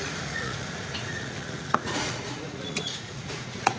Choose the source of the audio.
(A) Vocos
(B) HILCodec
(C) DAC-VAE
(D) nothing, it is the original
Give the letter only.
A